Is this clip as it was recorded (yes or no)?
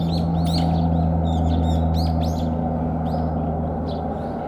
yes